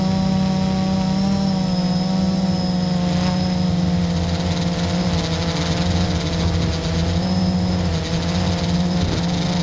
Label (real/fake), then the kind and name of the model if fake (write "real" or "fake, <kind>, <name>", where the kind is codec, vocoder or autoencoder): real